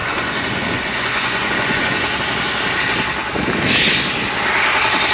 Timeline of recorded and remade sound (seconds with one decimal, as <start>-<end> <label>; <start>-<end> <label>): 0.0-2.2 remade; 2.2-5.1 recorded